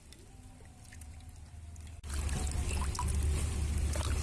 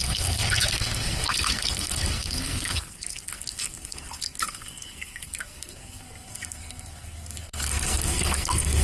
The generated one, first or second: second